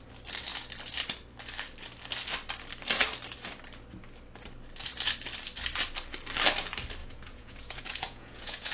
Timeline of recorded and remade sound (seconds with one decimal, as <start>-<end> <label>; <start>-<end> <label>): 0.0-7.0 recorded; 7.0-8.7 remade